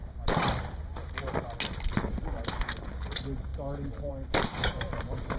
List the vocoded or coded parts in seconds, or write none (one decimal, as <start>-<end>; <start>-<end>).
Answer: none